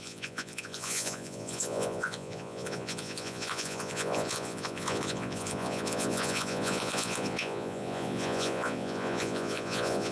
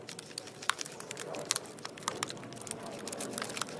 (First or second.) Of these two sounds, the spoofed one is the first